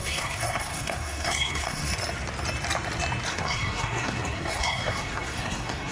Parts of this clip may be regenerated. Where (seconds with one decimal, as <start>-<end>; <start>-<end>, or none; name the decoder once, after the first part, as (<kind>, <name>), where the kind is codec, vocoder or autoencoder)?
0.0-1.9 (codec, SNAC); 3.3-5.9